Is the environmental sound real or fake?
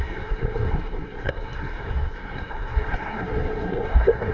fake